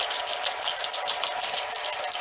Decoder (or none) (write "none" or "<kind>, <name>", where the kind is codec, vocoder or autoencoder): none